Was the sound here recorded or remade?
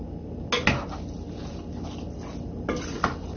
recorded